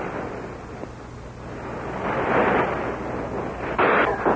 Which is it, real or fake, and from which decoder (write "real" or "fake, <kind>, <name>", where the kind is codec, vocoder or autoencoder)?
real